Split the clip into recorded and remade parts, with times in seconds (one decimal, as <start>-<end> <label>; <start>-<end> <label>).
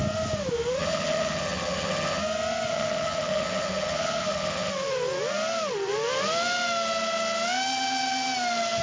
0.0-0.8 recorded; 0.8-2.2 remade; 2.2-2.7 recorded; 2.7-4.7 remade; 4.7-8.8 recorded